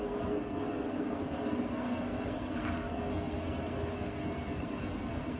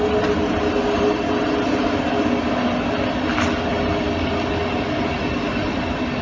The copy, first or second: first